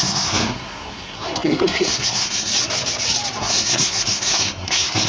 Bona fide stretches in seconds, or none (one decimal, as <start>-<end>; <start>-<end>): 2.5-3.4

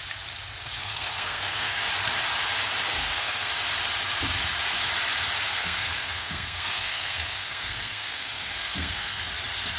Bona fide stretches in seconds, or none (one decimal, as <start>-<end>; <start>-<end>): 0.0-0.8; 1.9-2.9; 3.5-5.5; 9.3-9.8

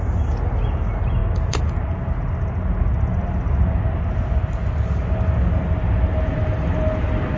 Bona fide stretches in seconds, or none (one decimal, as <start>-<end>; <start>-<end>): 0.0-7.4

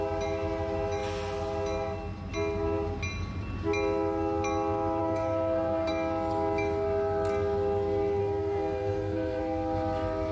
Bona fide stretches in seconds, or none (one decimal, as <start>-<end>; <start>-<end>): 0.0-5.0; 5.9-8.2; 9.4-10.3